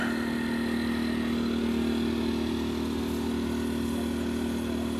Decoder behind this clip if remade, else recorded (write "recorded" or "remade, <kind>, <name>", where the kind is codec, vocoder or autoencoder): recorded